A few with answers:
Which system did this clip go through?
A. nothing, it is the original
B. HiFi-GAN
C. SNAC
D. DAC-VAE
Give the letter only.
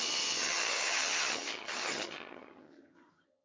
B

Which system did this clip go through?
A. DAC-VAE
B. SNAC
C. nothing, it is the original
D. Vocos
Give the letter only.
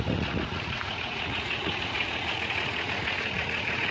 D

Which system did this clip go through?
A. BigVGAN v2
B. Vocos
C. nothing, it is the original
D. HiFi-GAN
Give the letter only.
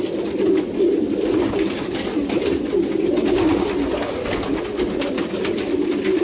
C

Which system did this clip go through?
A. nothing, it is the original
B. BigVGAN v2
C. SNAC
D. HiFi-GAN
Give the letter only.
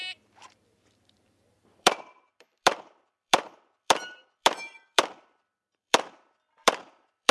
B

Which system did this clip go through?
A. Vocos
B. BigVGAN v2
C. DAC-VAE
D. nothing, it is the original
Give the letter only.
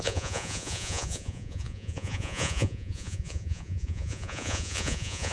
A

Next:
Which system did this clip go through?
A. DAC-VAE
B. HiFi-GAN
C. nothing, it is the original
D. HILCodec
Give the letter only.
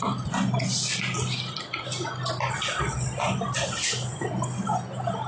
C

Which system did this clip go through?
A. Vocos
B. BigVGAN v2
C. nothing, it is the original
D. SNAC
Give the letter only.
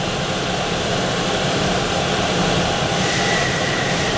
B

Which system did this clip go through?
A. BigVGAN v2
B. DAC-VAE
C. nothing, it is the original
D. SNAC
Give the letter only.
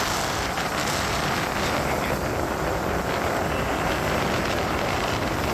C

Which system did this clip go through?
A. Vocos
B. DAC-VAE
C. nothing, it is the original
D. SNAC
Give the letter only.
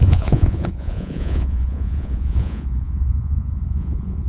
A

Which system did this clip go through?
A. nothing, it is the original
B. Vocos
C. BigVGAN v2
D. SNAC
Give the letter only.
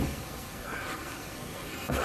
D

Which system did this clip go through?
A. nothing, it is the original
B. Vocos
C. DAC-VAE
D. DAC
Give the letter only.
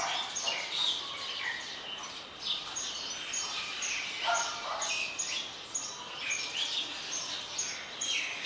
A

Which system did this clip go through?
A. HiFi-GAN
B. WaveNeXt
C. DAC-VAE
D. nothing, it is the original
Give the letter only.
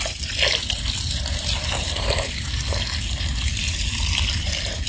D